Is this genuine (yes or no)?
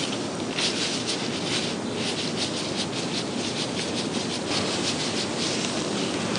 yes